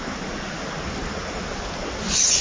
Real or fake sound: real